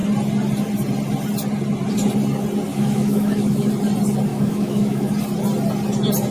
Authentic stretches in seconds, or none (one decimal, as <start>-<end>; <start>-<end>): 0.0-2.7; 3.7-4.3; 5.1-6.3

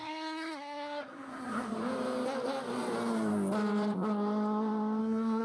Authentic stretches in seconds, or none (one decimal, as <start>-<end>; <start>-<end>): 1.8-5.0

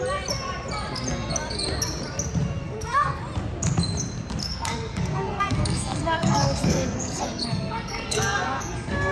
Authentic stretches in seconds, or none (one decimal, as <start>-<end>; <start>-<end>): 0.0-2.6; 3.2-4.4

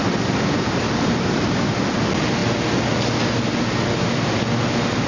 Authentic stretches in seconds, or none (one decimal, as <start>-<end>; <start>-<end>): 1.4-5.1

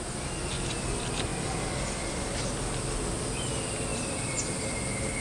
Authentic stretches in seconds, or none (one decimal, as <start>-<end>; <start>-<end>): 0.0-5.2

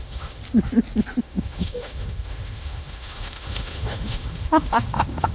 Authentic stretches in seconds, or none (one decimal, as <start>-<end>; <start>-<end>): 0.4-1.2